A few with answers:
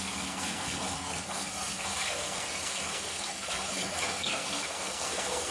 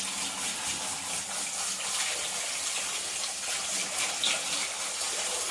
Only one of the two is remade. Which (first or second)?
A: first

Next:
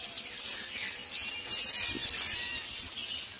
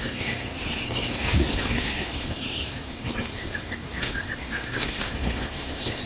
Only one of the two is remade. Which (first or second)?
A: second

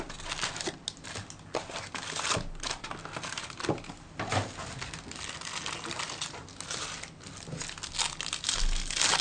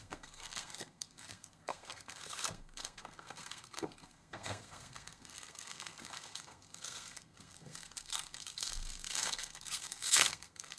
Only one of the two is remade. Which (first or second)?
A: second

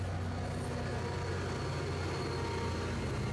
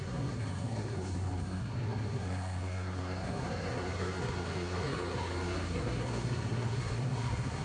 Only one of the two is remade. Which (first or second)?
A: second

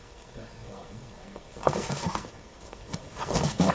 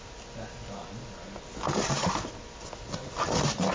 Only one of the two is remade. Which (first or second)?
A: first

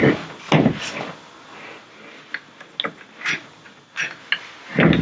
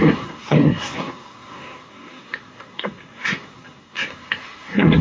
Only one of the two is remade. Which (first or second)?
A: second